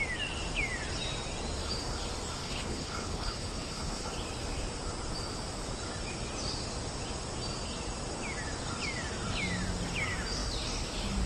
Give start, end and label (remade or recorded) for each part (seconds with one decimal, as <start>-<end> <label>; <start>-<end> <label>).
0.0-2.4 recorded; 2.4-4.1 remade; 4.1-11.3 recorded